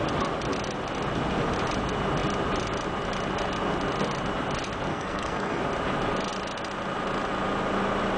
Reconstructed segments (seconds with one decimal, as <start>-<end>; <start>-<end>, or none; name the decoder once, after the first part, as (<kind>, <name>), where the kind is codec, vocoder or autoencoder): 4.9-5.6 (codec, SNAC)